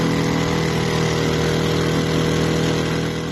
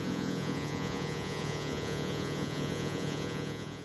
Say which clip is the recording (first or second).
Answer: first